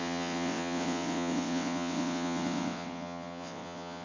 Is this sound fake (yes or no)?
yes